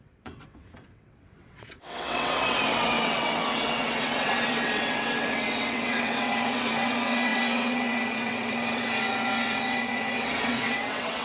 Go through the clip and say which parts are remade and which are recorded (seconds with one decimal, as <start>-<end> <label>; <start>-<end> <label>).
0.0-11.2 remade